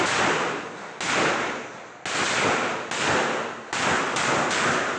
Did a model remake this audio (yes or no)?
no